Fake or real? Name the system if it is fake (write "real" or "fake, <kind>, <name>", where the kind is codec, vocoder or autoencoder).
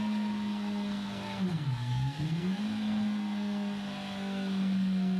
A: fake, codec, SNAC